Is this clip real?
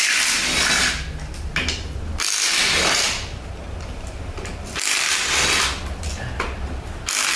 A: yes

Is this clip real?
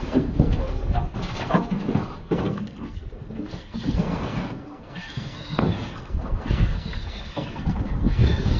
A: no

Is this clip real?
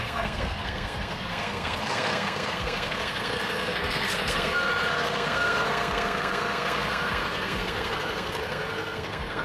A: no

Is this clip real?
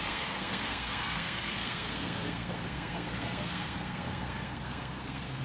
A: no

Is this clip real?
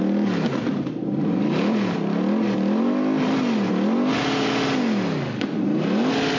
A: yes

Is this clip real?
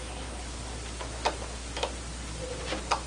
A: yes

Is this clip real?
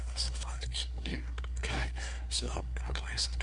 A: no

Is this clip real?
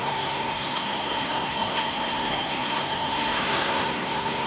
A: no